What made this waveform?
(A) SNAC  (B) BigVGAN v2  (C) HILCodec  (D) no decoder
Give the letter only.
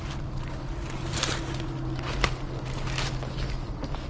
D